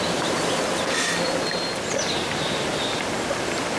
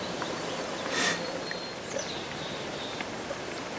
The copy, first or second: second